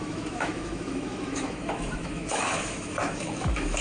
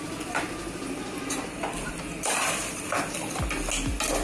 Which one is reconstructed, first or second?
first